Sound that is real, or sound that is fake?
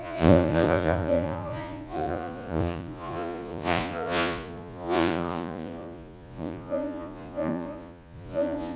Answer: fake